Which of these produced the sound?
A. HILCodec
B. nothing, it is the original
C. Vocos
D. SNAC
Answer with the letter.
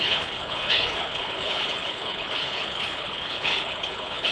A